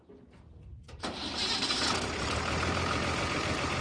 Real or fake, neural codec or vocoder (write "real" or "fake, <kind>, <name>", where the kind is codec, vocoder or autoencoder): fake, vocoder, BigVGAN v2